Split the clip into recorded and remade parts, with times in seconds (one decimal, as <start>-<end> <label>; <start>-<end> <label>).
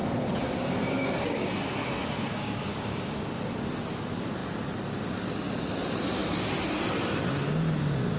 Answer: 0.0-3.2 remade; 3.2-8.2 recorded